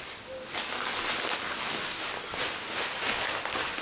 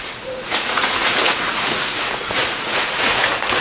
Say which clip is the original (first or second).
first